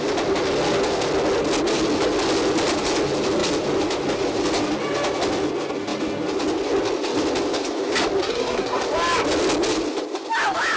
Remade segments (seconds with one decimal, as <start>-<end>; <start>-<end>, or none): 8.2-8.8